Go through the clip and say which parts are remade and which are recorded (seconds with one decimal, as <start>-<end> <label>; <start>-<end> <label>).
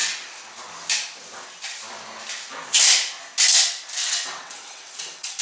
0.0-4.0 recorded; 4.0-5.4 remade